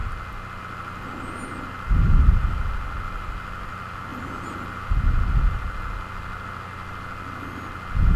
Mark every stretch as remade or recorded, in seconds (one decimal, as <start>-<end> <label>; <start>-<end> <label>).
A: 0.0-8.2 recorded